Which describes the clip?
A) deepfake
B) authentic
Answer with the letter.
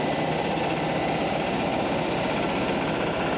B